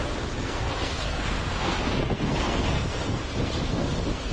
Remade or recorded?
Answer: remade